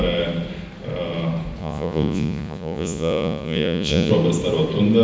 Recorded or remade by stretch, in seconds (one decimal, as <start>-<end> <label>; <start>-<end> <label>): 0.0-1.6 recorded; 1.6-4.1 remade; 4.1-5.0 recorded